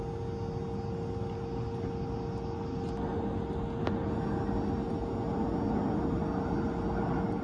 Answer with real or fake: real